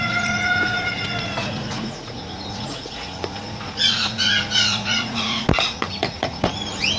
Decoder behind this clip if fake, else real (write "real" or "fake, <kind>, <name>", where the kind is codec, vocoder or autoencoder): fake, vocoder, Vocos